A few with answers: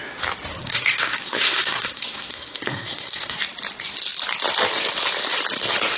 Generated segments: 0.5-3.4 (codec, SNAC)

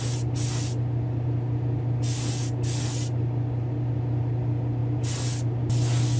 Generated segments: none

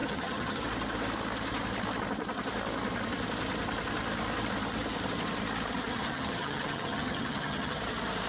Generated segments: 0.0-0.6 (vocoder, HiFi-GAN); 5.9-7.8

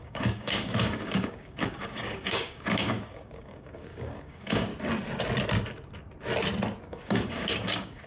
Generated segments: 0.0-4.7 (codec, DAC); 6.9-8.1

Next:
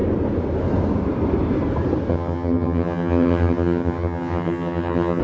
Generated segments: 2.1-5.2 (vocoder, HiFi-GAN)

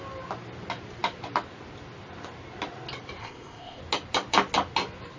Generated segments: 3.2-3.8 (codec, ZipCodec)

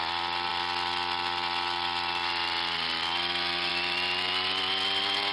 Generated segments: none

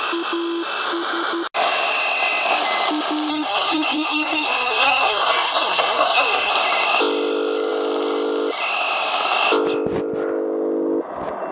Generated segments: 3.3-6.5 (codec, SNAC)